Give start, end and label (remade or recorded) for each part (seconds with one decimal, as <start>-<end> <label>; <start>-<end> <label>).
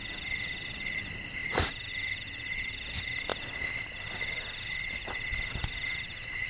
0.0-6.5 recorded